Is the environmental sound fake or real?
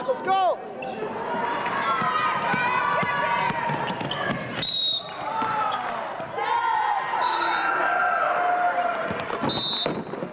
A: real